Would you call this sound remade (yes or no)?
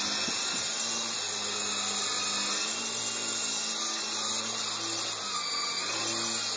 no